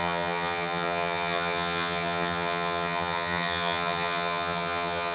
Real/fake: fake